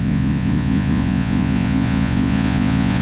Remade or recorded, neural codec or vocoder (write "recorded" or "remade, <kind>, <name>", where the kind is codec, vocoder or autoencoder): remade, vocoder, Vocos